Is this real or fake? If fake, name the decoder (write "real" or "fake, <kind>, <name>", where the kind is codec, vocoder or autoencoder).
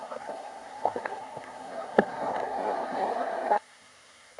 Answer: fake, codec, SNAC